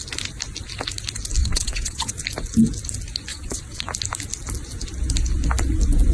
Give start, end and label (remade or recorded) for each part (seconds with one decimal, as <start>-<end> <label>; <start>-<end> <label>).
0.0-1.4 recorded; 1.4-2.1 remade; 2.1-3.3 recorded; 3.3-3.9 remade; 3.9-6.1 recorded